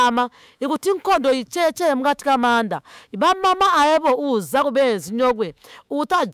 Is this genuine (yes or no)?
no